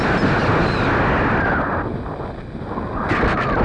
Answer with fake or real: real